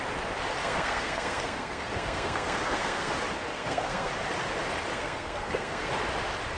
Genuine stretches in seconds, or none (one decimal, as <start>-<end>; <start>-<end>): 0.0-0.6; 3.1-3.5; 4.1-4.9; 5.9-6.6

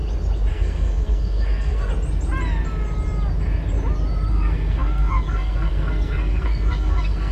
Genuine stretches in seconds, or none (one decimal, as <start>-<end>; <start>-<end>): 0.0-0.5; 1.9-4.3